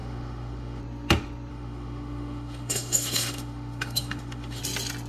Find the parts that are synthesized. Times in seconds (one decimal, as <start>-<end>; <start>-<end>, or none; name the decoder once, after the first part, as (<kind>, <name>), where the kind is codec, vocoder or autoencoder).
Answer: 0.0-0.8 (autoencoder, DAC-VAE); 1.5-4.6